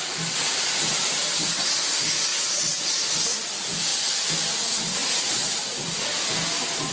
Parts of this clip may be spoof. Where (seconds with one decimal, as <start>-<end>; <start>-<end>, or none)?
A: 2.3-2.8; 5.0-5.6